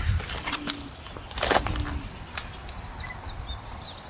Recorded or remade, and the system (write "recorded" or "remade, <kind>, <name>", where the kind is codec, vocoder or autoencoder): recorded